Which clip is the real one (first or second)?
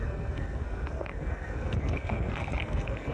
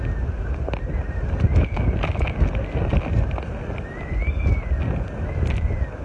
second